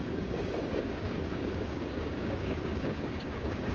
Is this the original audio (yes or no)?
no